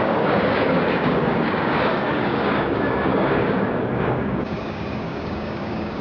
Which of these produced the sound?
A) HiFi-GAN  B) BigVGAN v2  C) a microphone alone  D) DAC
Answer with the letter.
D